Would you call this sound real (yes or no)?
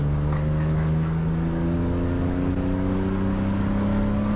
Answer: no